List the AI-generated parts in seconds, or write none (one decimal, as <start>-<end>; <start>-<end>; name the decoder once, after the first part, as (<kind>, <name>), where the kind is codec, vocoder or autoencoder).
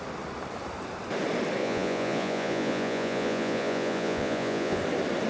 1.6-4.8 (vocoder, Vocos)